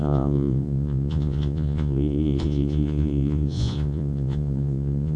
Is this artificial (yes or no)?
yes